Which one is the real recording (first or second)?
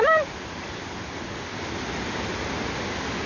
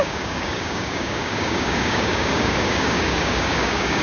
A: first